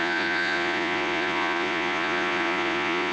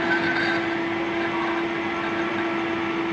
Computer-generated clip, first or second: first